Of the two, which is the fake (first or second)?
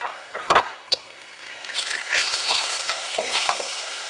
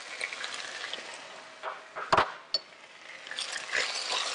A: first